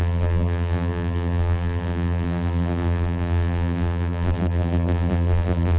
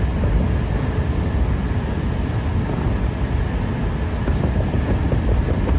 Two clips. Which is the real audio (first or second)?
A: second